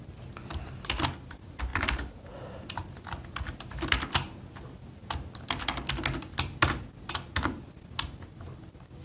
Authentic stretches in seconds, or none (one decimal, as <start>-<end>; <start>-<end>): 0.0-9.0